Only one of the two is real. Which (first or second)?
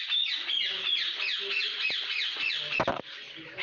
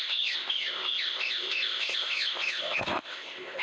first